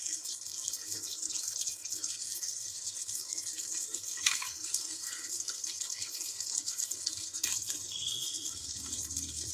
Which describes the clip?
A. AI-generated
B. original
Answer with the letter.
A